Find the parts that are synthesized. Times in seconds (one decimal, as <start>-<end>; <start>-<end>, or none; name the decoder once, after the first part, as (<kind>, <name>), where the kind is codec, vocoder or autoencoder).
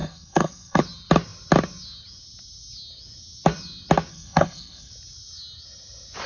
0.0-0.8 (codec, SNAC); 4.1-4.9